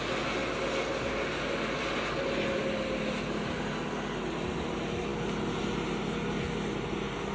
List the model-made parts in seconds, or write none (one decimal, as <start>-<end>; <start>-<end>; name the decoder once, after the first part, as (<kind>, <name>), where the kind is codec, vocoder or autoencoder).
none